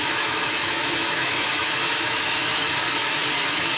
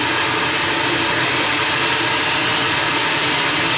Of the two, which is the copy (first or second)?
first